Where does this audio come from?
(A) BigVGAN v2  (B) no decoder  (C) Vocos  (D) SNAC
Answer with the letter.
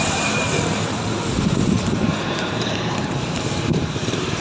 A